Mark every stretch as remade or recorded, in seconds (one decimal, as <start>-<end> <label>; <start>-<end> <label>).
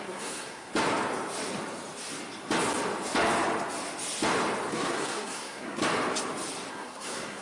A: 0.0-0.7 remade; 0.7-4.7 recorded; 4.7-5.8 remade; 5.8-6.7 recorded; 6.7-7.4 remade